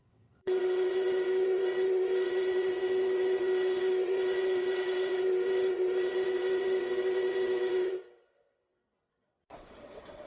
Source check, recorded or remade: remade